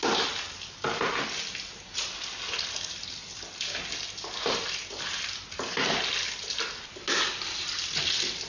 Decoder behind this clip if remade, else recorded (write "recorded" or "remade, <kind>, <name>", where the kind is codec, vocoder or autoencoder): recorded